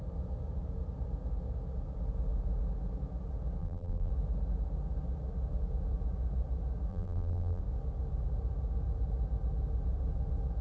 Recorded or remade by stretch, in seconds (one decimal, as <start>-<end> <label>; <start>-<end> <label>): 0.0-3.6 recorded; 3.6-4.1 remade; 4.1-6.9 recorded; 6.9-7.6 remade; 7.6-10.6 recorded